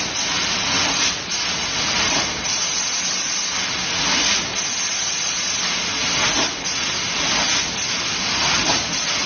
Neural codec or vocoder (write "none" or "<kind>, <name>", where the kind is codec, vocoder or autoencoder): none